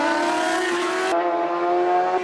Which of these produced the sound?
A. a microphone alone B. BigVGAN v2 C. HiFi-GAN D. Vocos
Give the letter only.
A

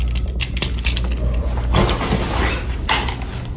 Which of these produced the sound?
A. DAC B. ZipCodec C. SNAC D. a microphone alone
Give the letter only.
D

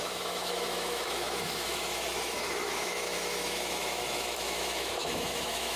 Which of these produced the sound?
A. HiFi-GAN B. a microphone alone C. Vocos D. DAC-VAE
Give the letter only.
D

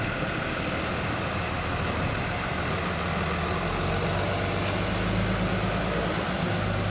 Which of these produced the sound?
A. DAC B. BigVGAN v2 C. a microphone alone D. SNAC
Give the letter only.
C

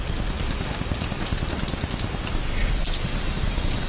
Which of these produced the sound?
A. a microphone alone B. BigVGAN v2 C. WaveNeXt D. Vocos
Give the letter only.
B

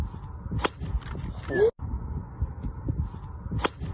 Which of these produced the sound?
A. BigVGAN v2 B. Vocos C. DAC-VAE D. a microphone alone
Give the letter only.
D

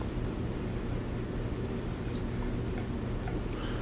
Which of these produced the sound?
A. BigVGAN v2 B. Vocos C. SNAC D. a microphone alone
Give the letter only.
D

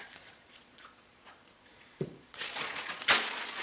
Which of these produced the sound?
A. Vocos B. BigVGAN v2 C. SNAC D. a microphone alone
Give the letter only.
A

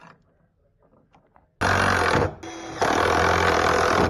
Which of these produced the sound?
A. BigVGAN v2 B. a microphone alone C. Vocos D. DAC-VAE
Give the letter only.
B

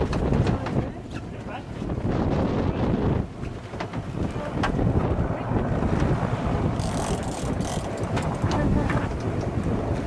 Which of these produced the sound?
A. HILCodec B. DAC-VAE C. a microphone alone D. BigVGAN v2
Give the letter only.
C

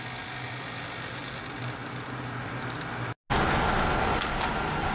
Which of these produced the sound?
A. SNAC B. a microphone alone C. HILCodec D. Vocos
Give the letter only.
B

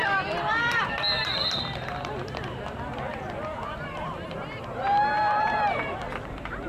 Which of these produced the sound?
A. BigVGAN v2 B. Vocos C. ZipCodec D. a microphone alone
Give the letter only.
A